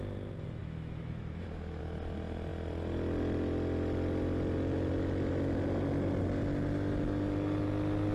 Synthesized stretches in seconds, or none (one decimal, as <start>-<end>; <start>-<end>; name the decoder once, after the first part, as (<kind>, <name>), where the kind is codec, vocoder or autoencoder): 0.6-1.8 (autoencoder, DAC-VAE)